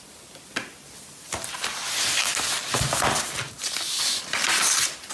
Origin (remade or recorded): recorded